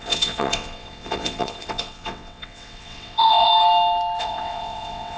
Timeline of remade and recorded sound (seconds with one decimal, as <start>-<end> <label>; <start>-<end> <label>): 0.0-3.5 remade; 3.5-4.2 recorded; 4.2-5.2 remade